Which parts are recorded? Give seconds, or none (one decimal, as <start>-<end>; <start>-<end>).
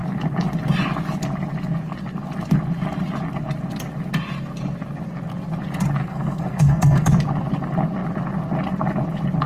0.0-6.0; 7.1-9.5